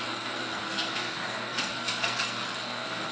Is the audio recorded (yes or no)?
no